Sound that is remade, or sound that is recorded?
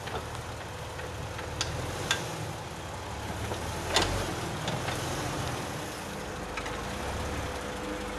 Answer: recorded